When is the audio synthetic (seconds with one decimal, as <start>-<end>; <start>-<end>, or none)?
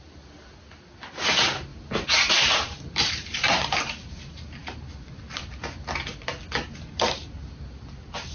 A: 1.7-3.8